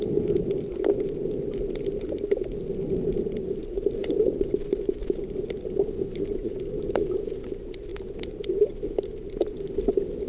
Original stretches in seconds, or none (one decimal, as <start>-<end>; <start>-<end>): 0.0-7.9; 9.8-10.3